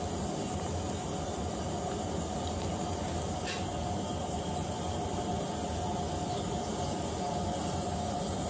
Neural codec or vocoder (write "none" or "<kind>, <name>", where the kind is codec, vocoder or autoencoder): none